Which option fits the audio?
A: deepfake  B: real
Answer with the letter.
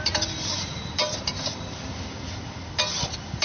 B